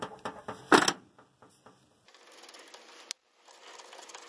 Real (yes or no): yes